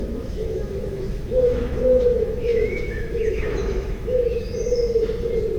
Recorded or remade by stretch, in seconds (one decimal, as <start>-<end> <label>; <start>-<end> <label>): 0.0-4.5 remade; 4.5-5.6 recorded